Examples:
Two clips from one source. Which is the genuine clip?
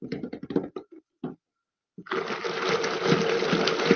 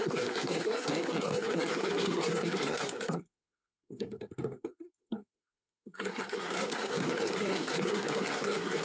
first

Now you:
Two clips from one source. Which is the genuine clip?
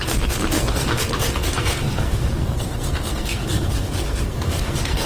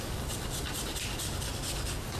second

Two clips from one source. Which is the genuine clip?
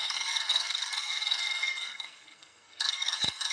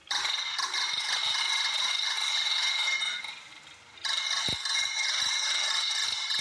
second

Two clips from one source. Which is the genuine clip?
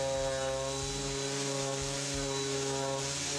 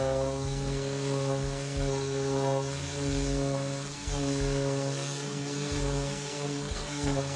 first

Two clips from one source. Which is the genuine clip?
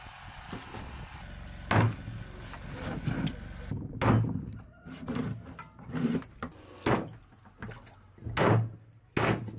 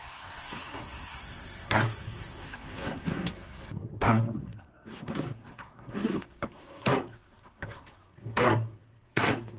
first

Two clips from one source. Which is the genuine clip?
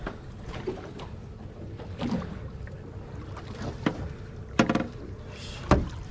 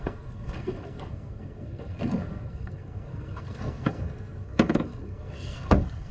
first